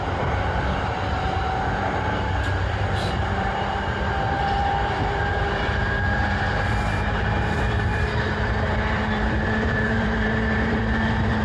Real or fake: fake